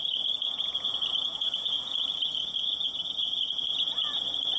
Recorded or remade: remade